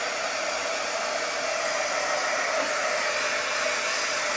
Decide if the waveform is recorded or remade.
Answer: recorded